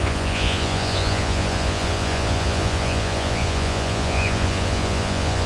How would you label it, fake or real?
fake